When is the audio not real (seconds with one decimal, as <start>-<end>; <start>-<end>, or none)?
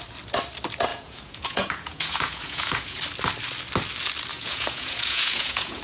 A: 0.9-3.0; 4.3-5.8